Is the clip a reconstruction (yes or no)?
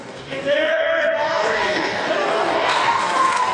yes